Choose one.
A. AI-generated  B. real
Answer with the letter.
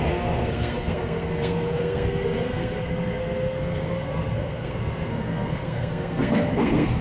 A